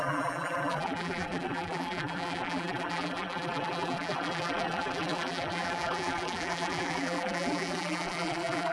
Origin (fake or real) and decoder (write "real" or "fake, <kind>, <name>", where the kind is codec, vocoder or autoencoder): fake, vocoder, BigVGAN v2